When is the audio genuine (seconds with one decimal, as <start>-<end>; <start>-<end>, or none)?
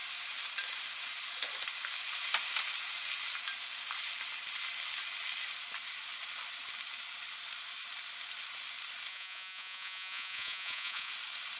0.0-9.1; 11.1-11.6